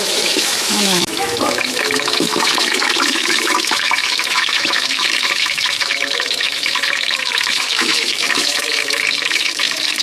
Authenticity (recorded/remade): remade